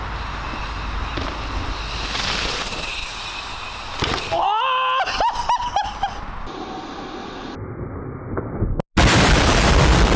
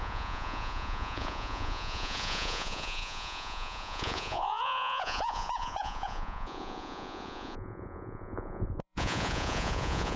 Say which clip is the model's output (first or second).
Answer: second